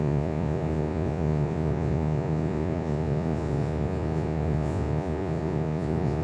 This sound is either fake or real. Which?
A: fake